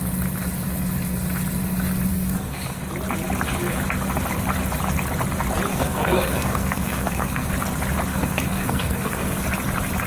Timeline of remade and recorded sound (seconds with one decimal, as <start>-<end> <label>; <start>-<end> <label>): 0.0-2.1 recorded; 2.1-2.8 remade; 2.8-5.7 recorded; 5.7-7.5 remade; 7.5-8.1 recorded; 8.1-9.4 remade; 9.4-10.1 recorded